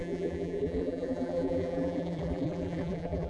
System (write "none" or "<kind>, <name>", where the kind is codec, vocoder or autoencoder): vocoder, BigVGAN v2